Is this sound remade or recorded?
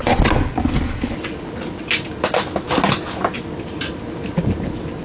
recorded